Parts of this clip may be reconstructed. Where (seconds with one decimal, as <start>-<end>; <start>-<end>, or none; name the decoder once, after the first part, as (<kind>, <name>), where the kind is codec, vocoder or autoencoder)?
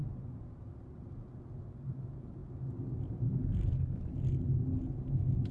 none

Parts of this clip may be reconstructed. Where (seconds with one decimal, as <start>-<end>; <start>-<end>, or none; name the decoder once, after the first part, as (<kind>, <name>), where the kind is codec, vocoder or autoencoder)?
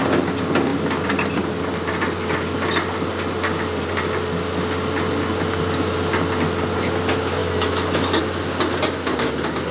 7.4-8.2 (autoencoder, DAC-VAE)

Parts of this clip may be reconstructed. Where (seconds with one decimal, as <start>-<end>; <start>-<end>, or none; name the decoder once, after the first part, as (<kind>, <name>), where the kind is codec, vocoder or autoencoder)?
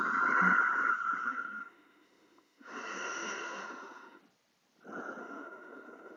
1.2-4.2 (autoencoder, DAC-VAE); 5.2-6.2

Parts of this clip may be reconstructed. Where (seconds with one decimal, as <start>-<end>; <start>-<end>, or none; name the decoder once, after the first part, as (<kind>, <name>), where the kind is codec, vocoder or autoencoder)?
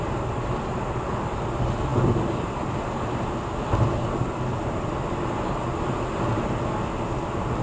none